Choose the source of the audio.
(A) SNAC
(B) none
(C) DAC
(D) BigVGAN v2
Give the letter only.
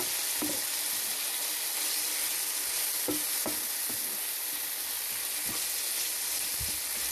B